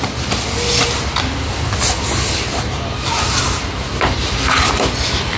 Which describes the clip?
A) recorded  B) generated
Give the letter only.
A